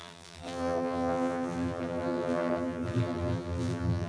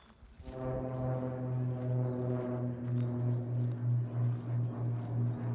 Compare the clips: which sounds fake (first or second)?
first